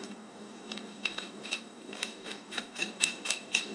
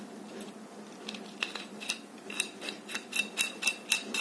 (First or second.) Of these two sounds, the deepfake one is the first